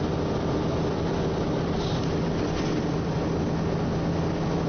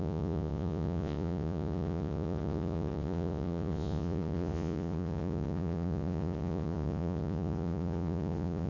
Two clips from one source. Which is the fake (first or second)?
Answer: second